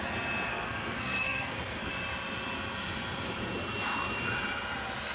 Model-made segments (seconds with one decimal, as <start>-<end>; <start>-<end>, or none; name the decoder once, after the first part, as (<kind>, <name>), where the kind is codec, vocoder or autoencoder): 0.5-1.9 (codec, SNAC)